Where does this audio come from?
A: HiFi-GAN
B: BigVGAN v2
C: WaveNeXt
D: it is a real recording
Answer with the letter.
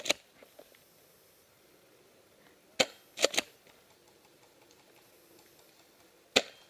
D